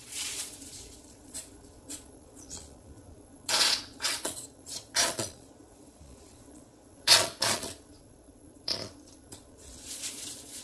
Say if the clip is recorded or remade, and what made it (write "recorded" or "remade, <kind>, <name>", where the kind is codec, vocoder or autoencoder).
remade, vocoder, Vocos